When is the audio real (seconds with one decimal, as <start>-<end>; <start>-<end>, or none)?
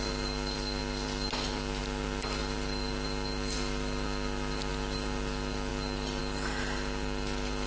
0.0-7.7